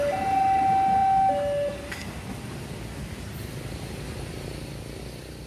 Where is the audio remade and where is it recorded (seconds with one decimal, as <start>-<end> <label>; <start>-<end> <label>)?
0.0-5.5 recorded